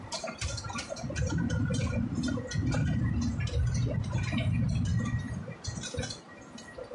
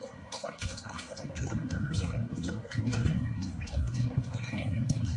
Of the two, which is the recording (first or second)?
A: first